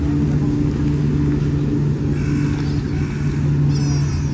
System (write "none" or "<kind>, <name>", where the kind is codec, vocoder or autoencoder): none